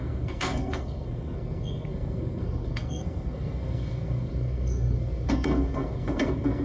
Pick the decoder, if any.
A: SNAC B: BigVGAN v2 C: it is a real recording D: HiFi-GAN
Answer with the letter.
A